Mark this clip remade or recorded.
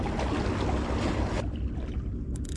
recorded